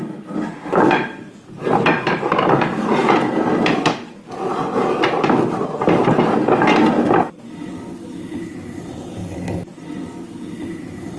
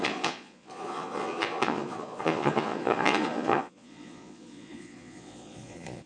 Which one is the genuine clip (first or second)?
first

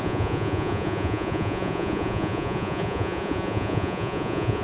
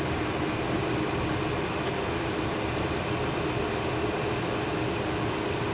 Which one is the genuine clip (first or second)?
second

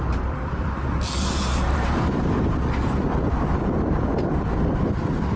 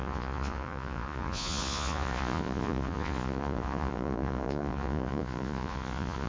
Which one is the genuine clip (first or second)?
first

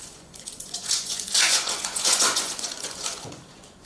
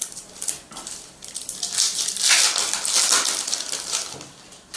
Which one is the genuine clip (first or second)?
second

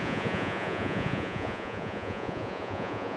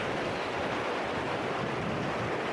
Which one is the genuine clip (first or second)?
second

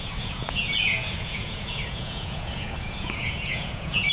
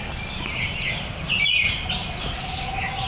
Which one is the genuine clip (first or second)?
second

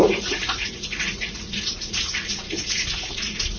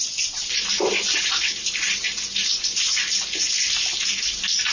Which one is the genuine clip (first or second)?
second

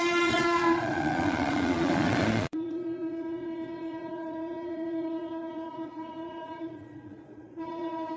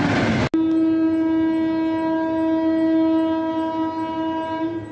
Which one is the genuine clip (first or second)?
second